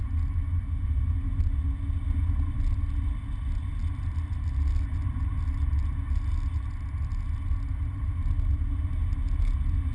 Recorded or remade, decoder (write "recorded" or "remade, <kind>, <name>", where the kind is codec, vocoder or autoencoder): recorded